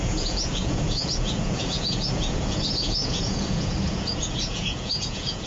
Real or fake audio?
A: fake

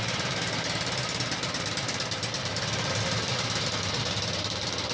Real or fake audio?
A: fake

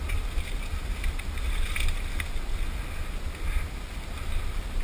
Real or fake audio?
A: real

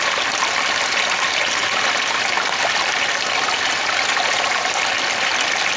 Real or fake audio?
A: real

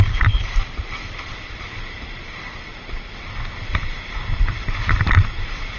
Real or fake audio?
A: fake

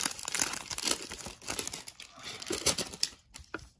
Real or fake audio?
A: real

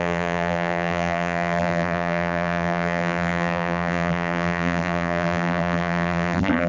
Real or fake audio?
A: fake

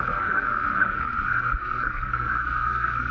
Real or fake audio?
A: fake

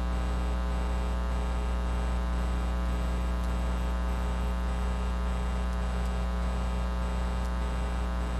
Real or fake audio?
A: real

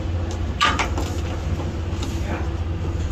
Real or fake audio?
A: real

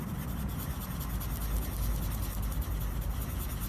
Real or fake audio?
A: real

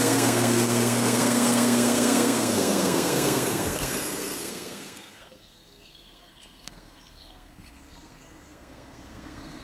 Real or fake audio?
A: fake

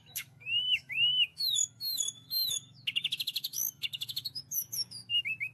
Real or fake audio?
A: fake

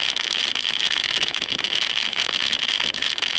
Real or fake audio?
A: fake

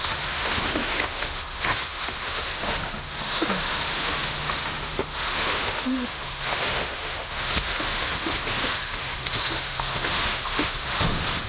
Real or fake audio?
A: fake